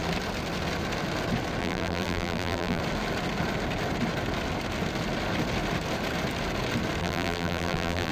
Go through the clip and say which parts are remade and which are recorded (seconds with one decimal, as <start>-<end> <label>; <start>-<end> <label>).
0.0-1.6 recorded; 1.6-2.8 remade; 2.8-7.0 recorded; 7.0-8.1 remade